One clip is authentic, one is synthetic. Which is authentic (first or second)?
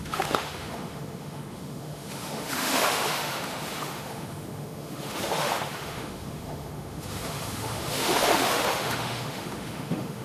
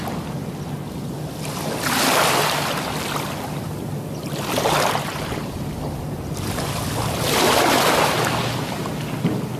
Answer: second